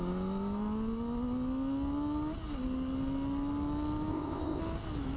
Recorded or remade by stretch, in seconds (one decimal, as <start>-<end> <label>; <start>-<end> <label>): 0.0-4.1 recorded; 4.1-4.6 remade; 4.6-5.2 recorded